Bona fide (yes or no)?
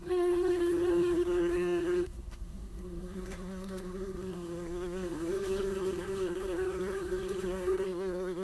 no